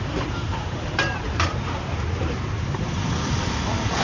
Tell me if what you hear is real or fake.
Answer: fake